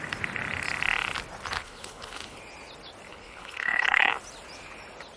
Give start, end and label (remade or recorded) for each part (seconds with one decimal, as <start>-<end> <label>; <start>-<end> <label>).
0.0-1.6 recorded; 1.6-2.4 remade; 2.4-3.1 recorded; 3.1-4.1 remade; 4.1-5.2 recorded